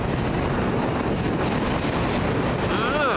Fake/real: real